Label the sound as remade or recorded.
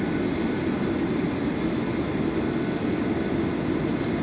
recorded